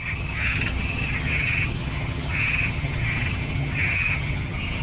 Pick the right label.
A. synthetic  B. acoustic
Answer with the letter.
A